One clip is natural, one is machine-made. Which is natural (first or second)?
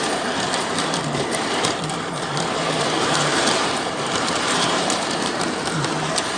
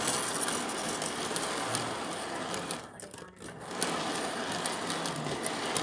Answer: second